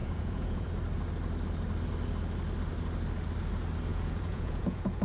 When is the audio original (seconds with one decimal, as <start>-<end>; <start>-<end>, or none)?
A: 0.7-3.9